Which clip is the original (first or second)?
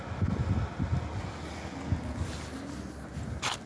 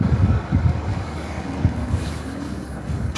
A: first